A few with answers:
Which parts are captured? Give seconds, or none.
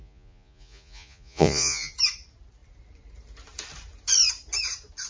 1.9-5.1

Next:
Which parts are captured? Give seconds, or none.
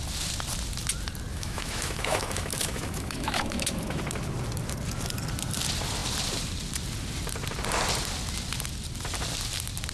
0.0-1.3; 4.0-9.9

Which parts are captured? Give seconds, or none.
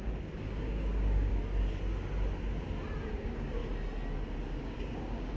1.3-3.1; 3.6-4.4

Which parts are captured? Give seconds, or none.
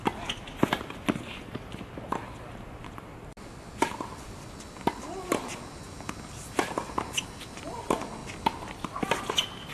0.0-9.7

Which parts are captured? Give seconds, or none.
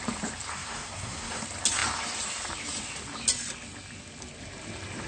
0.0-0.5; 1.4-5.1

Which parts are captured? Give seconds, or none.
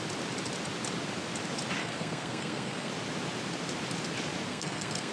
0.0-1.8; 2.9-4.5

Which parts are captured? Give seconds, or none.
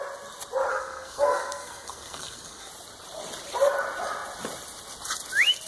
0.0-0.7; 2.7-5.7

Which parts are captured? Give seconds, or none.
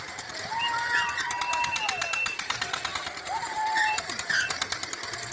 0.0-5.3